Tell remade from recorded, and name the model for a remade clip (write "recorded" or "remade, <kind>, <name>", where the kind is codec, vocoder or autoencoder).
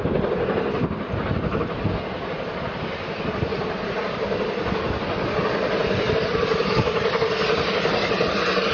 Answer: recorded